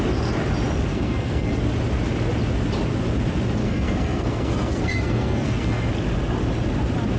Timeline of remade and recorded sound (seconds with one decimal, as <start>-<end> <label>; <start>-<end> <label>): 0.0-0.9 recorded; 0.9-1.6 remade; 1.6-3.6 recorded; 3.6-5.9 remade; 5.9-7.2 recorded